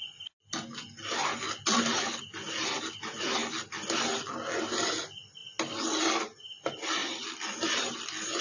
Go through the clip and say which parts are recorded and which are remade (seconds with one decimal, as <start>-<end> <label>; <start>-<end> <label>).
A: 0.0-8.4 recorded